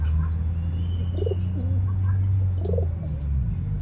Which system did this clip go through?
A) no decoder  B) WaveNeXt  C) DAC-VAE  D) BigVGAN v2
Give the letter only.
A